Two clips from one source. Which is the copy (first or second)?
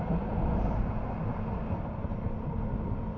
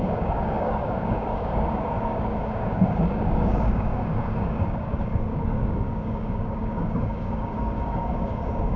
second